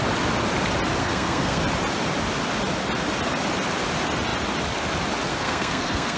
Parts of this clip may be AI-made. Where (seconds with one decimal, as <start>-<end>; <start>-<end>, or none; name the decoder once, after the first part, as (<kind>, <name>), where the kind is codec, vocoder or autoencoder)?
1.0-1.6 (codec, SNAC); 5.3-6.2